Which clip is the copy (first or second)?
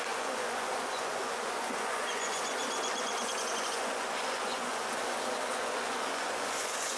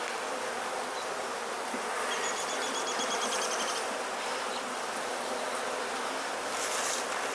first